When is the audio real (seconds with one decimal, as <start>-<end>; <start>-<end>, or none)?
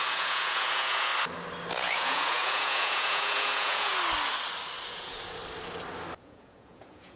1.1-1.7; 3.9-4.9; 5.4-6.2